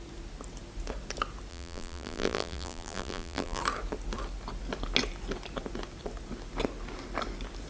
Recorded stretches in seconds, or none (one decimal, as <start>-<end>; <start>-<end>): 0.0-1.5; 3.6-7.7